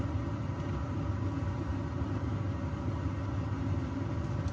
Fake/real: real